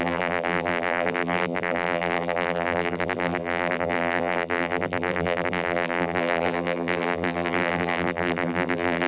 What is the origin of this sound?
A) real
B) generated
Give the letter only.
B